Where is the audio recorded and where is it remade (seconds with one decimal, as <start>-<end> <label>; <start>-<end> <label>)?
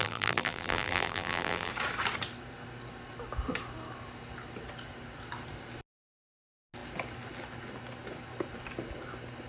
0.0-1.7 remade; 1.7-9.5 recorded